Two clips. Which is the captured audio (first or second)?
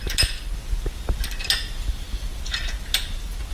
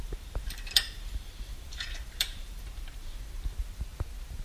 first